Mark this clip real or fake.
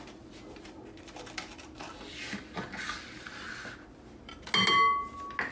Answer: real